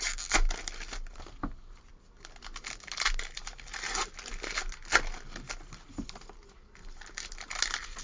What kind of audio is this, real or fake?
real